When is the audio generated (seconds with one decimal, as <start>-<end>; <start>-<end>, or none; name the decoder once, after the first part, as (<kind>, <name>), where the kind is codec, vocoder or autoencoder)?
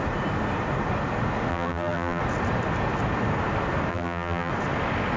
1.5-2.2 (vocoder, BigVGAN v2); 3.9-4.5